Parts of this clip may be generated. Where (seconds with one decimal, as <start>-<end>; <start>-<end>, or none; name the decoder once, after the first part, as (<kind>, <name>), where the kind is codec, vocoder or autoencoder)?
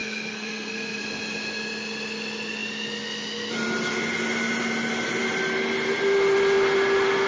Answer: 0.0-1.0 (codec, SNAC)